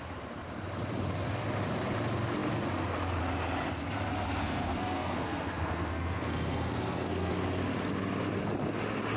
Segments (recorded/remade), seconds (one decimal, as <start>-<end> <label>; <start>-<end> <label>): 0.0-4.4 recorded; 4.4-7.3 remade; 7.3-9.2 recorded